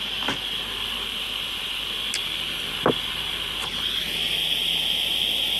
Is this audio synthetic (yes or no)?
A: no